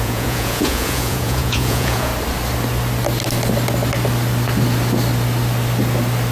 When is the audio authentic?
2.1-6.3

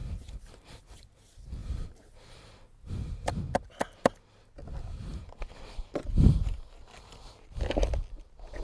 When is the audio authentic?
0.8-1.6; 2.4-5.1; 7.5-8.6

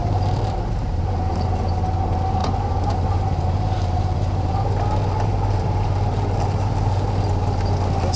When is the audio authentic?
1.7-2.4; 7.3-8.2